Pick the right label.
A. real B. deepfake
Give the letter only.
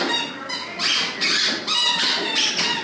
A